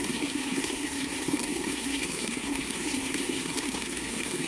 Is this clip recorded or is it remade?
remade